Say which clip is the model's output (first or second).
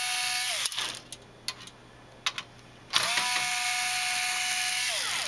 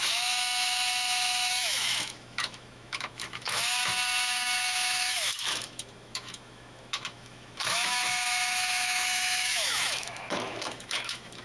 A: second